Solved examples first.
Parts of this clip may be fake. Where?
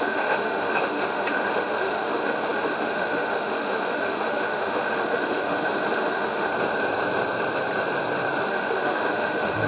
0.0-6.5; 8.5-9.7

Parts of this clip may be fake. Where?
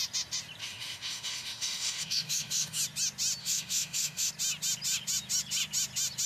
0.6-2.8; 3.4-4.3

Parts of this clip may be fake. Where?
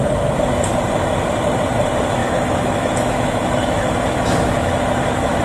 2.2-5.4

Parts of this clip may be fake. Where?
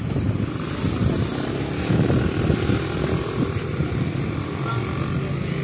none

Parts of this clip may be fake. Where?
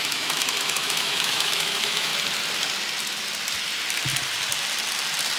0.0-2.1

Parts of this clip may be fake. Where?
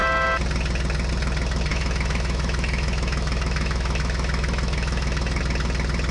1.7-5.4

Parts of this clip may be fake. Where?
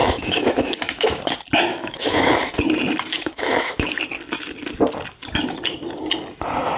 0.0-1.2; 1.7-2.3; 3.1-4.0